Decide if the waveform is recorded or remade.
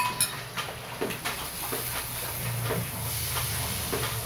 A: recorded